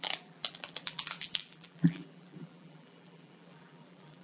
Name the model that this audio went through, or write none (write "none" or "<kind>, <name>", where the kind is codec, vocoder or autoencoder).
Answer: vocoder, BigVGAN v2